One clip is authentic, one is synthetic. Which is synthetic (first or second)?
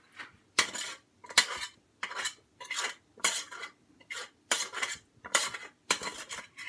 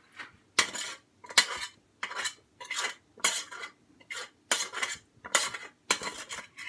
first